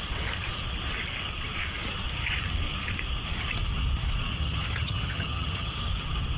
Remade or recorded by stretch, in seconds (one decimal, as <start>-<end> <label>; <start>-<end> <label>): 0.0-4.4 recorded; 4.4-5.7 remade; 5.7-6.4 recorded